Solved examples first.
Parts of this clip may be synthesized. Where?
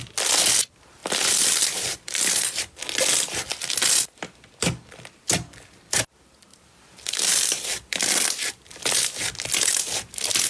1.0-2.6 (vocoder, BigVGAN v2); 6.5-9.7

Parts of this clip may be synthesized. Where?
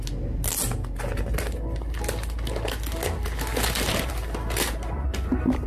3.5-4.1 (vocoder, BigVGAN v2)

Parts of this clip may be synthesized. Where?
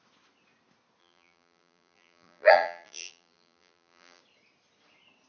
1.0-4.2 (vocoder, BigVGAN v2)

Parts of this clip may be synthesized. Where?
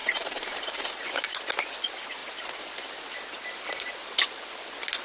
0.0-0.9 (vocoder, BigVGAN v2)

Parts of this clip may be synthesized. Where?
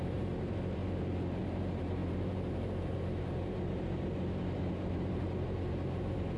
0.0-0.8 (vocoder, BigVGAN v2); 1.4-6.4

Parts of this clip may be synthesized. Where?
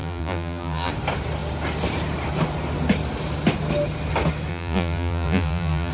0.0-0.9 (vocoder, BigVGAN v2); 4.5-5.9